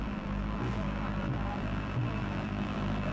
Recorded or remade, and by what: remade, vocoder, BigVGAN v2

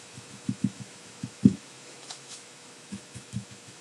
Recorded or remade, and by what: remade, autoencoder, DAC-VAE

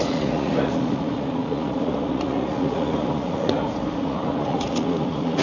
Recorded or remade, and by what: remade, vocoder, Vocos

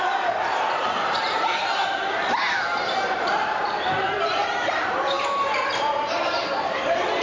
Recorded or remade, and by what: remade, vocoder, BigVGAN v2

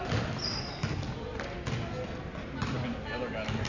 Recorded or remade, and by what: recorded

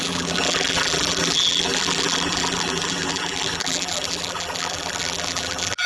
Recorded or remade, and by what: remade, vocoder, BigVGAN v2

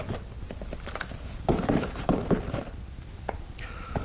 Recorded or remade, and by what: recorded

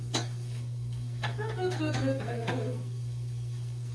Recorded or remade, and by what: remade, codec, SNAC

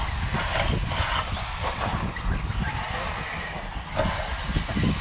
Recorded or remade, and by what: recorded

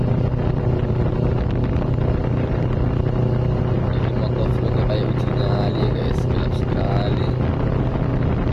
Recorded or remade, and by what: recorded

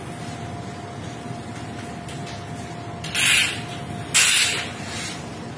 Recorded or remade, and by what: recorded